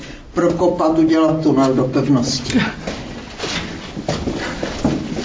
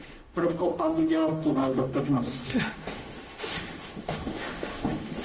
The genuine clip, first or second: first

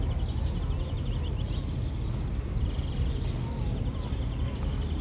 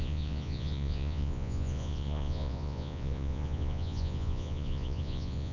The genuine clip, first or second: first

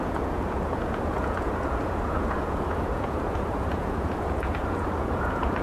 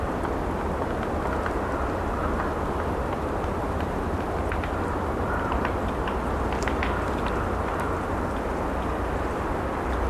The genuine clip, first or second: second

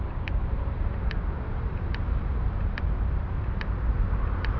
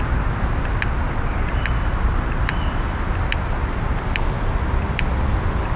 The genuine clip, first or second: second